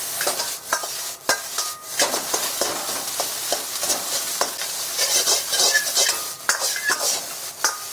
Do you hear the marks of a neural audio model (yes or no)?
no